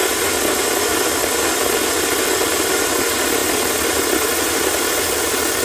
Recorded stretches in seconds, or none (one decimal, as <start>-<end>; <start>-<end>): 0.0-5.6